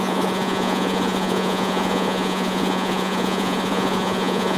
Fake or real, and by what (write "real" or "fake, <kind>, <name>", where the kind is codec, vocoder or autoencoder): fake, vocoder, Vocos